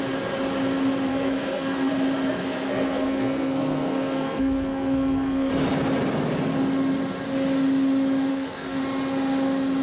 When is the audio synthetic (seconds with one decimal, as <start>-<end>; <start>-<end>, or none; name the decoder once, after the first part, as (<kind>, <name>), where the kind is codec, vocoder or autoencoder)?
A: 1.1-1.9 (codec, SNAC); 2.4-5.5; 8.3-8.8